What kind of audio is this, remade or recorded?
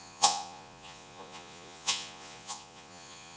remade